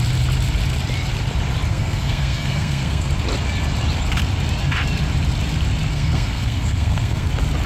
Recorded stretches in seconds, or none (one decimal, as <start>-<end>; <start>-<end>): 0.0-1.7; 3.1-5.9; 7.3-7.7